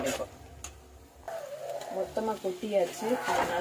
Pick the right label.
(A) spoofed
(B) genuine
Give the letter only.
B